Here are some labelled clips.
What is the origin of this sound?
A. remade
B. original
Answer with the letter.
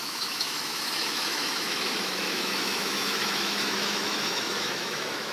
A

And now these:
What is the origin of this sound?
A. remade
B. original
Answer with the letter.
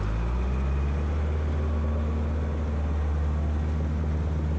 B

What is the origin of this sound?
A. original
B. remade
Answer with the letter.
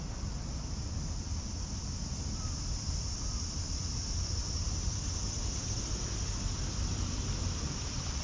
B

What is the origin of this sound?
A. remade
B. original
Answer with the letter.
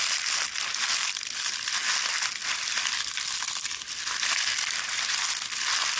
B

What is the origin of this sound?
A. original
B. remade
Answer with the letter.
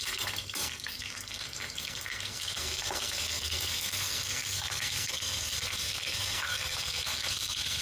B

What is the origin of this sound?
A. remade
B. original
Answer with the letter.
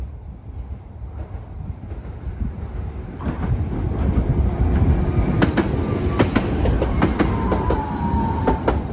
B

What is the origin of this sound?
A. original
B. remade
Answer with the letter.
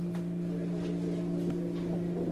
A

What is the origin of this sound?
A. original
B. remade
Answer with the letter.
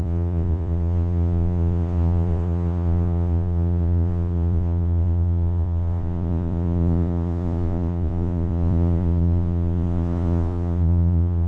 B